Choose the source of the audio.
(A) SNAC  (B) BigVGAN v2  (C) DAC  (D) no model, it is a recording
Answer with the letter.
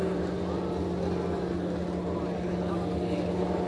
D